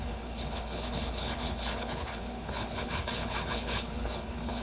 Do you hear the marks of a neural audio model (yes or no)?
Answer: yes